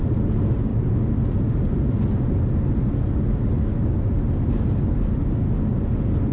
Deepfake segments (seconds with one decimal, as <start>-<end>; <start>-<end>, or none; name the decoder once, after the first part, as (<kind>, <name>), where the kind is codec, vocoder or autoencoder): none